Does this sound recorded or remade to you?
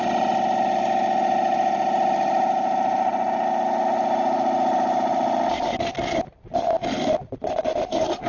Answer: recorded